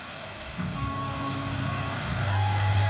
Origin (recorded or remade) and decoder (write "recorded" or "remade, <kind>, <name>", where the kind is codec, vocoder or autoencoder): remade, codec, DAC